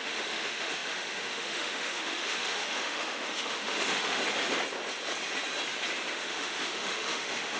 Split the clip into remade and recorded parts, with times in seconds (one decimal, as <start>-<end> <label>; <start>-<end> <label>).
0.0-4.2 remade; 4.2-6.1 recorded; 6.1-7.6 remade